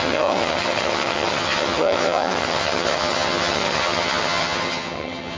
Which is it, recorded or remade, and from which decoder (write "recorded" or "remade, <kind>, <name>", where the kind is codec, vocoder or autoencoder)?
remade, vocoder, HiFi-GAN